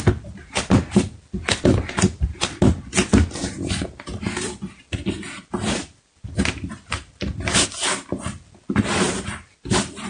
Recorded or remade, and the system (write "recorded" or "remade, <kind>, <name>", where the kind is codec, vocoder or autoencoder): recorded